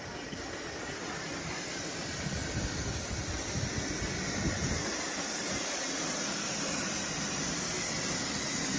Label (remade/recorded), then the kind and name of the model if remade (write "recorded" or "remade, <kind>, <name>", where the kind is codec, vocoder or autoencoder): recorded